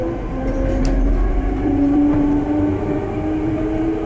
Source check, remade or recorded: remade